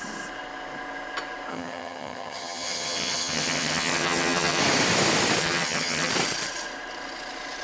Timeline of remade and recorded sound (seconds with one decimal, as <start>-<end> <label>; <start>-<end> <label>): 0.0-1.5 recorded; 1.5-4.6 remade; 4.6-5.4 recorded; 5.4-6.1 remade; 6.1-7.6 recorded